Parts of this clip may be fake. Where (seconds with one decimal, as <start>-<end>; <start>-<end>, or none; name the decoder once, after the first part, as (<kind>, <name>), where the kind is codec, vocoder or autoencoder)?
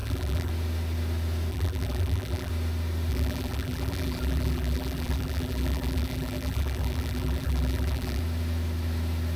0.0-0.5 (vocoder, BigVGAN v2); 1.5-2.5; 3.1-8.2